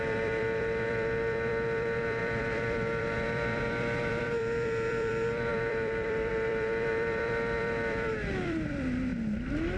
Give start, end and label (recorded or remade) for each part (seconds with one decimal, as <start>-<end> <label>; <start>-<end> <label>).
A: 0.0-9.1 remade; 9.1-9.8 recorded